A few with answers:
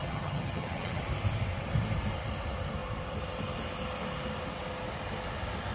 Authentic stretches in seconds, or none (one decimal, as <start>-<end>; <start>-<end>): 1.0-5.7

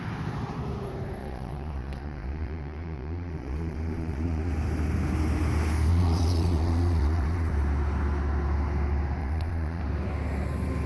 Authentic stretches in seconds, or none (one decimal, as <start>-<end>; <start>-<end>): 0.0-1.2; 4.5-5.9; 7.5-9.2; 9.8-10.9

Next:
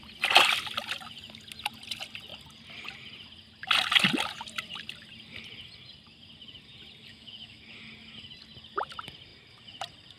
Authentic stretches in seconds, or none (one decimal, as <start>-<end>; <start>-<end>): 0.0-7.1; 7.6-10.2

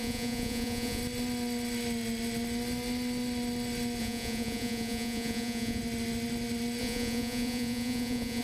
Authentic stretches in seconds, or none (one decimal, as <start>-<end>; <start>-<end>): 1.0-4.0; 5.8-6.8